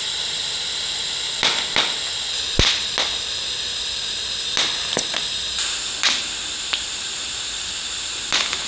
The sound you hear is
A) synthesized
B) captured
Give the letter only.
B